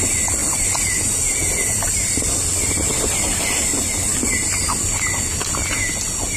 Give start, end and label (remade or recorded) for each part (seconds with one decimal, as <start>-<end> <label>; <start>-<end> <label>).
0.0-6.4 recorded